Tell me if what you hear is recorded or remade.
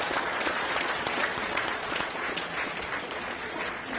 remade